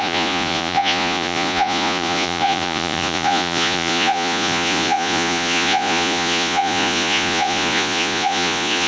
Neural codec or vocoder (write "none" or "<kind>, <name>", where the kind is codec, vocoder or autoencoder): vocoder, Vocos